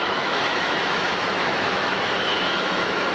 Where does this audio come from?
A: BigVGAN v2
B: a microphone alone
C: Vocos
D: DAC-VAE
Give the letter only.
D